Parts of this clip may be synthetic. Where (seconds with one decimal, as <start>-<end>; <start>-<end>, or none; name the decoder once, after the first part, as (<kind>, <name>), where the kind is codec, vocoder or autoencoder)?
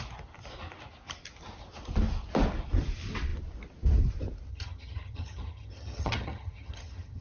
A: 4.5-7.2 (vocoder, HiFi-GAN)